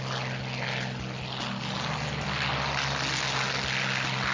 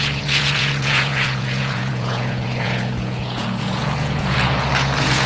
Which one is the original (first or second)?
first